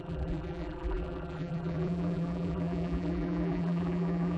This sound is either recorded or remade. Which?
remade